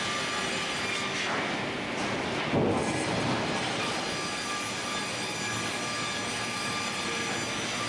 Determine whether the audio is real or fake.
real